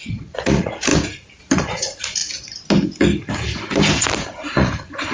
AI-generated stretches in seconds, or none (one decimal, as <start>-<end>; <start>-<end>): 0.0-0.9; 1.4-2.2; 4.2-5.1